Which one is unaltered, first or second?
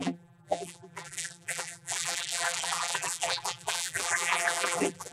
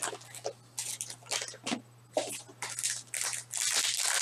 second